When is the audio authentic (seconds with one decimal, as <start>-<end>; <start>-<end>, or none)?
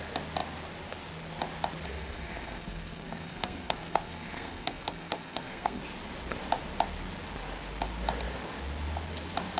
0.0-1.9; 5.8-9.6